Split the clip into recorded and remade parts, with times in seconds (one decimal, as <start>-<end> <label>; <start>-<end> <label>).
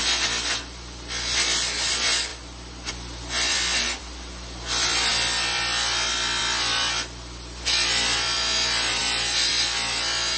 0.0-2.3 remade; 2.3-2.9 recorded; 2.9-10.4 remade